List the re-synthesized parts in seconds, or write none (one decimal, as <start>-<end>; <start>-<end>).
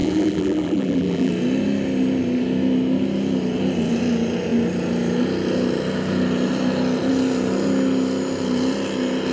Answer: 0.0-1.3